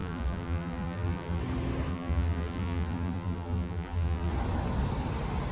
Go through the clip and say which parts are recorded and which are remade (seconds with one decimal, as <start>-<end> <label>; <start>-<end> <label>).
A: 0.0-1.4 remade; 1.4-1.9 recorded; 1.9-4.3 remade; 4.3-5.5 recorded